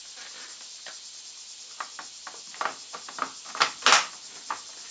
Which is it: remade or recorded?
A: recorded